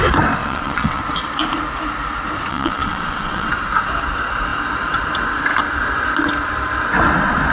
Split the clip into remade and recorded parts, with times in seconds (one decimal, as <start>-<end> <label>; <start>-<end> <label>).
0.0-0.4 recorded; 0.4-1.0 remade; 1.0-2.5 recorded; 2.5-3.5 remade; 3.5-7.5 recorded